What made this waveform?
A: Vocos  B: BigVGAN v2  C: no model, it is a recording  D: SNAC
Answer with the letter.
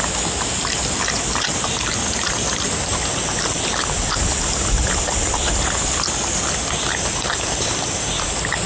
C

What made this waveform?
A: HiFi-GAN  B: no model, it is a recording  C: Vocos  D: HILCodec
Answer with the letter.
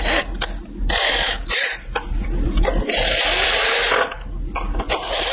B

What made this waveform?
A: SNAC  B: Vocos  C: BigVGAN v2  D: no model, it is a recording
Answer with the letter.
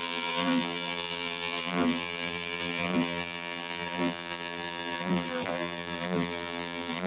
C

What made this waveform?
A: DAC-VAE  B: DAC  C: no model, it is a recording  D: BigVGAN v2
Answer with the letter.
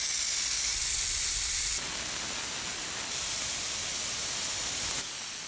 C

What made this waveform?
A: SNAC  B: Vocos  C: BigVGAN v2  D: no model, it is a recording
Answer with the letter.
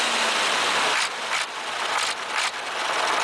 D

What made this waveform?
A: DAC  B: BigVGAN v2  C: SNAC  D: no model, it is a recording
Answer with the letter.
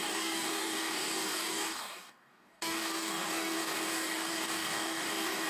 A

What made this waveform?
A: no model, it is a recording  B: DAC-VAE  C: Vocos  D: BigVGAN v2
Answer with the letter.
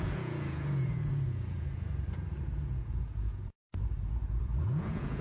C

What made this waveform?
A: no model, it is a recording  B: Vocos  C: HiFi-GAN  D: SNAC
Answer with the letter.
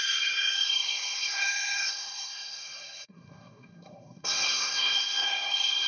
D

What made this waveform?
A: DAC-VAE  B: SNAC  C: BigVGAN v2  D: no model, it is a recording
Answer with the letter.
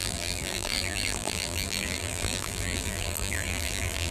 C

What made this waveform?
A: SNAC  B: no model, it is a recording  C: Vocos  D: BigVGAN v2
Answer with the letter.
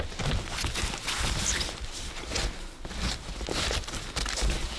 B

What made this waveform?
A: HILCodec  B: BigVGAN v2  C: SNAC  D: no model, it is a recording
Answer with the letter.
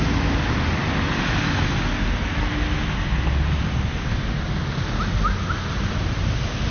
D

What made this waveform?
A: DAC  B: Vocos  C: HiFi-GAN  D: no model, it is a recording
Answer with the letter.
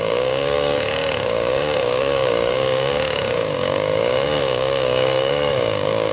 A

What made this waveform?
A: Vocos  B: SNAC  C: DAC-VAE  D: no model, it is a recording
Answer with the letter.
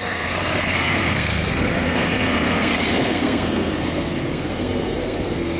B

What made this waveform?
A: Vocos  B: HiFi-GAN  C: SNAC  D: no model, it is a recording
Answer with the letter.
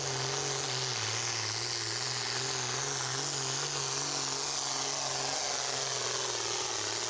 D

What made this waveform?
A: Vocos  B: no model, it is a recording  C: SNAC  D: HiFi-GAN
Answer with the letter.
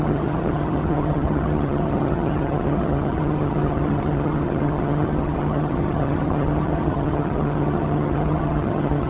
D